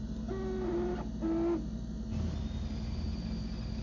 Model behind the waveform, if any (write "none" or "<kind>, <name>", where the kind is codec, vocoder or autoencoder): none